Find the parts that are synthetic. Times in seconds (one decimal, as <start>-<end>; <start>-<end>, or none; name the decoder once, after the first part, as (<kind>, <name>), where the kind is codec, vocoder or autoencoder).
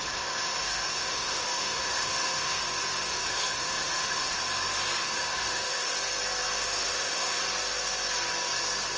0.0-2.6 (autoencoder, DAC-VAE); 3.1-4.4; 5.0-5.9; 6.6-7.4